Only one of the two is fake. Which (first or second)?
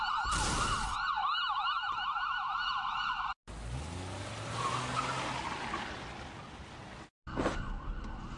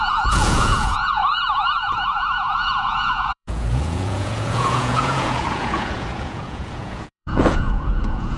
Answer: second